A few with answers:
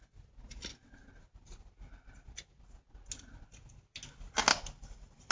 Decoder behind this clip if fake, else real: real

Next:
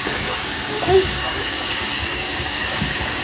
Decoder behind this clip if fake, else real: fake, codec, DAC